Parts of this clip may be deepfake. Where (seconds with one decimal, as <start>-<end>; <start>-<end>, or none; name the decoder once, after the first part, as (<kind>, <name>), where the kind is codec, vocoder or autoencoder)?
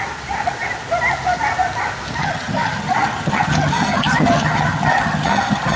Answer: 2.2-5.8 (vocoder, HiFi-GAN)